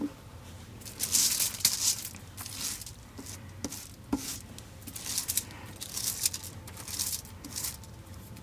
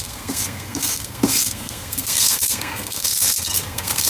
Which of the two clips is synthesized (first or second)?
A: second